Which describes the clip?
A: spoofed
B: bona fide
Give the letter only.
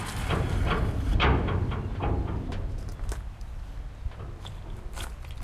B